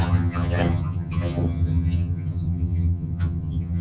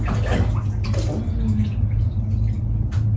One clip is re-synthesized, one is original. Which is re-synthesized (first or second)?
first